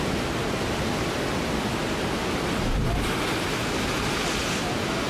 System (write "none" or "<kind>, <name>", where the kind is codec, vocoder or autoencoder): none